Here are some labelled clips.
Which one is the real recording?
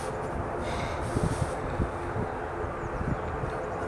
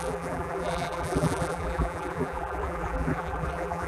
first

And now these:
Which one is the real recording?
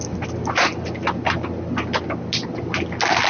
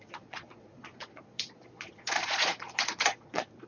first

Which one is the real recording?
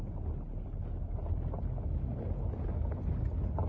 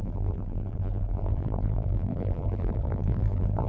first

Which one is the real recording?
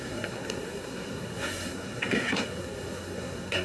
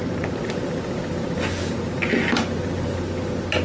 second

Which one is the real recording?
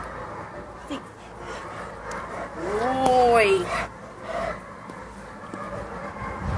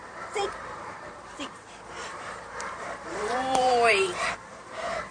first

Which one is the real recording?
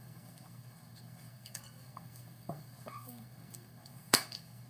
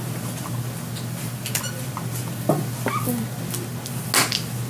second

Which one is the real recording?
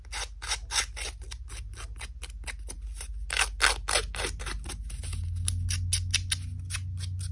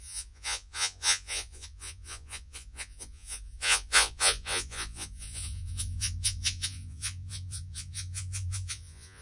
first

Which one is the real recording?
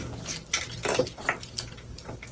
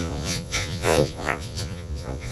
first